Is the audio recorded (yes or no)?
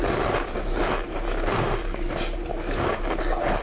yes